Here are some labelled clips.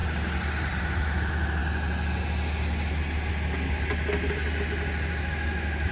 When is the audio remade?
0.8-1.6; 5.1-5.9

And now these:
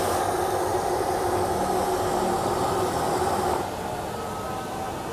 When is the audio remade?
none

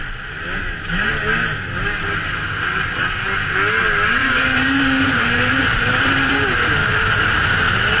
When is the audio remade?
4.2-6.3; 6.8-7.5

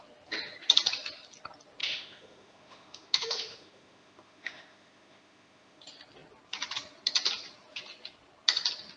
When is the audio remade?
1.8-5.8

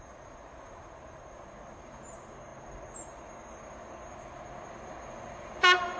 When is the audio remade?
none

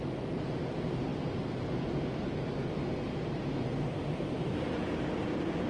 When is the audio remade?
none

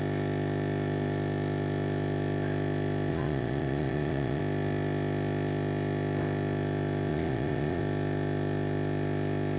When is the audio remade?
3.1-4.4; 7.1-7.8

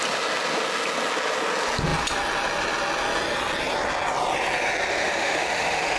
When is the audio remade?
4.9-6.0